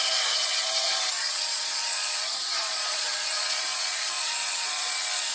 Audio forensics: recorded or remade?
remade